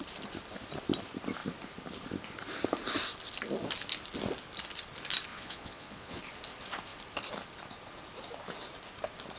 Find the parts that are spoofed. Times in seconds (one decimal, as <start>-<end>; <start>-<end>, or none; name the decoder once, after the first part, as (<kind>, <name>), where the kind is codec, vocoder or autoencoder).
5.3-6.2 (vocoder, Vocos)